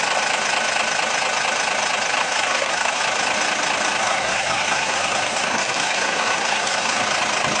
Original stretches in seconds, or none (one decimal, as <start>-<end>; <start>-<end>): 0.0-2.2; 3.0-4.0; 7.0-7.6